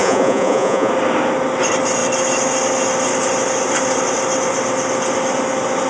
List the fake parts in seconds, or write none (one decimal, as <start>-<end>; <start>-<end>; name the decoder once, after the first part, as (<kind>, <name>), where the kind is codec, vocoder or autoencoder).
0.0-0.9 (vocoder, Vocos)